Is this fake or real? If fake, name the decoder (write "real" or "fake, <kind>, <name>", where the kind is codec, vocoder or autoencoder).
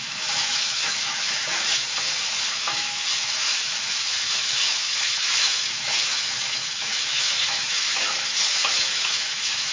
fake, autoencoder, DAC-VAE